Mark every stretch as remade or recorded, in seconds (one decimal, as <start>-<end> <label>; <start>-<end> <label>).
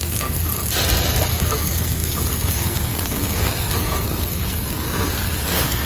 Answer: 0.0-0.5 remade; 0.5-1.3 recorded; 1.3-5.9 remade